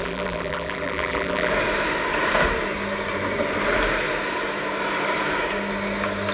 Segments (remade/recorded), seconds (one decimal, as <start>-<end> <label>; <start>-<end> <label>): 0.0-1.5 remade; 1.5-6.3 recorded